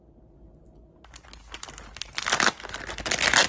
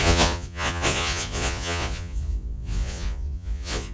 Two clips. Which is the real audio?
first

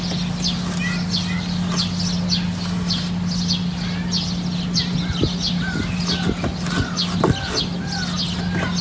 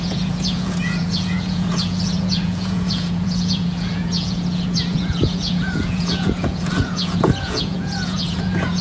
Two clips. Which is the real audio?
first